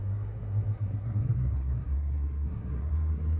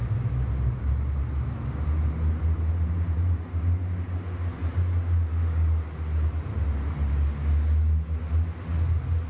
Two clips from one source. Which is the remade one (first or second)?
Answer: first